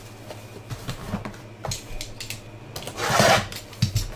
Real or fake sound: real